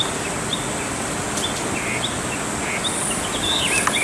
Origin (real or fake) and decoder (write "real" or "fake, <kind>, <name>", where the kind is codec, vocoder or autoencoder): real